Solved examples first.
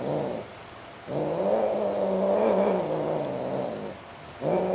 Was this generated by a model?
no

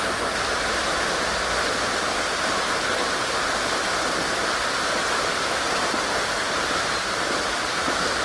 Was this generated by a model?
no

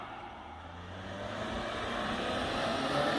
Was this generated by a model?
no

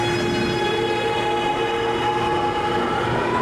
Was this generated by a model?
no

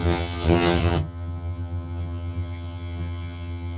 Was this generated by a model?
yes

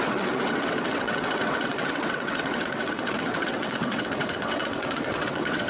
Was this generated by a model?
yes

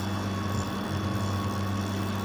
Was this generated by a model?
no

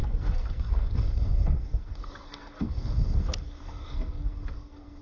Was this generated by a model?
yes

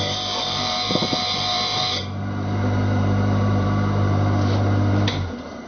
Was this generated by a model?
yes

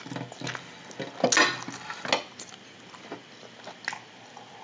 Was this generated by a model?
no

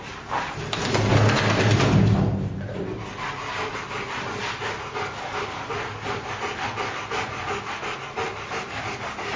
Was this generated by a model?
no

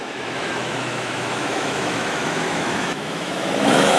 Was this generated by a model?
yes